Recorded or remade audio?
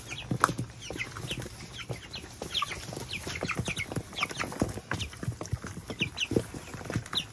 recorded